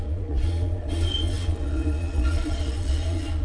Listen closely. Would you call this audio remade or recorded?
remade